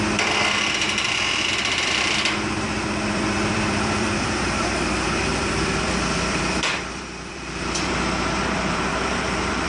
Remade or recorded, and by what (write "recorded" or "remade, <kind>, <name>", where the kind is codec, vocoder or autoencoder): remade, vocoder, BigVGAN v2